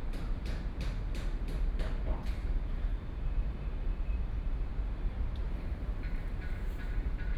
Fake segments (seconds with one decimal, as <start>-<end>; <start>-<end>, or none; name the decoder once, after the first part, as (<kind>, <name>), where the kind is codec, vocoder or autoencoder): 2.9-4.7 (vocoder, BigVGAN v2); 5.4-7.4

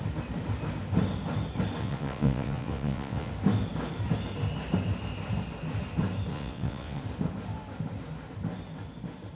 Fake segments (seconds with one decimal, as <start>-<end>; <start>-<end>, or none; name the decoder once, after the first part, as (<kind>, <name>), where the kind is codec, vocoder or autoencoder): 1.8-3.3 (vocoder, WaveNeXt); 6.3-7.0

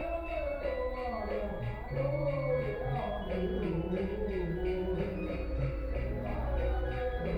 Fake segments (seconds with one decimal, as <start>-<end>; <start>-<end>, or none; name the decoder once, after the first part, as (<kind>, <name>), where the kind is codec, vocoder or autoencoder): 1.9-4.1 (vocoder, BigVGAN v2); 5.2-7.4

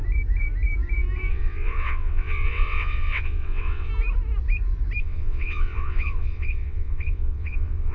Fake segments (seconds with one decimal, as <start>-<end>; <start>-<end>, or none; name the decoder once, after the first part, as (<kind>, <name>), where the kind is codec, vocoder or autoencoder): 1.3-3.9 (vocoder, WaveNeXt); 5.0-7.9

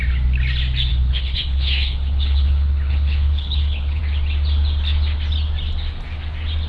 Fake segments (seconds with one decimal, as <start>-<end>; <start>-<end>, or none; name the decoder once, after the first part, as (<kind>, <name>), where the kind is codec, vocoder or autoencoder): 0.9-4.0 (codec, HILCodec)

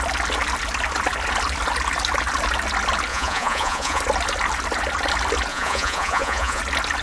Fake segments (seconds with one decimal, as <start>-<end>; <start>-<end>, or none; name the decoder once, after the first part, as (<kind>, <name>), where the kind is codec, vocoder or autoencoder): 3.1-4.0 (vocoder, Vocos); 5.5-6.6

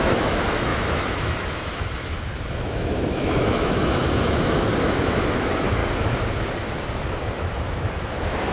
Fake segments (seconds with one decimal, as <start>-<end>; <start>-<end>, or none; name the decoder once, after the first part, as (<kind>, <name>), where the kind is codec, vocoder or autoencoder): 0.0-5.8 (autoencoder, DAC-VAE); 7.0-8.5